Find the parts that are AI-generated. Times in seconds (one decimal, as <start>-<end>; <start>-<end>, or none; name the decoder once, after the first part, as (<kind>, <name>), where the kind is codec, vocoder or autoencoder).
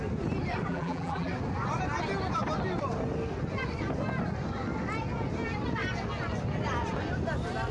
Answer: 0.7-1.3 (vocoder, BigVGAN v2)